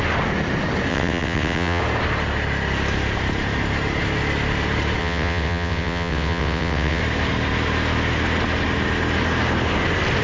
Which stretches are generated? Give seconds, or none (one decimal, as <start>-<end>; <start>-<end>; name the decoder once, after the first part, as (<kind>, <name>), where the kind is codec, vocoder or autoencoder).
0.9-1.8 (vocoder, WaveNeXt); 5.0-7.0